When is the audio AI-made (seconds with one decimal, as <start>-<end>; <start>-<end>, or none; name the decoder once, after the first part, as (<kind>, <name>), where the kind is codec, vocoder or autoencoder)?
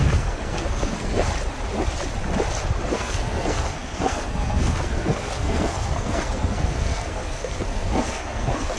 0.0-1.3 (codec, SNAC); 2.8-8.8